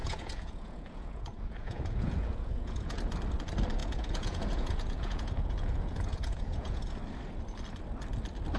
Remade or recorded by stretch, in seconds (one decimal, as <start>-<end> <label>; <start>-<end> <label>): 0.0-3.0 remade; 3.0-3.8 recorded; 3.8-6.8 remade; 6.8-8.6 recorded